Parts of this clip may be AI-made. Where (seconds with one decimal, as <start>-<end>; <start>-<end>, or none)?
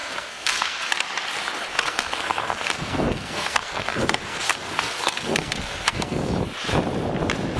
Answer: 0.0-0.9; 1.7-6.3